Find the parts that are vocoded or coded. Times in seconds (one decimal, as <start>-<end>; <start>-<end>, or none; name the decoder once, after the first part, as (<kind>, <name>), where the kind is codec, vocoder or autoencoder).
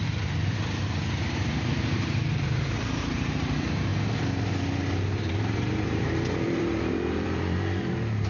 0.0-3.9 (vocoder, BigVGAN v2); 4.8-8.3